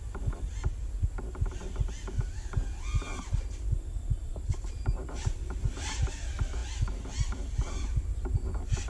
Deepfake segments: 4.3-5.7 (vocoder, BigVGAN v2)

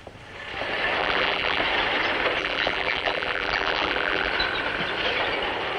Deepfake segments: 1.0-1.6 (vocoder, BigVGAN v2); 2.4-4.3

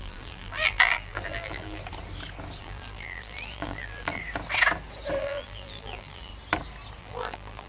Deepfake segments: 0.0-1.8 (vocoder, BigVGAN v2); 2.6-4.2; 5.2-6.3; 7.0-7.7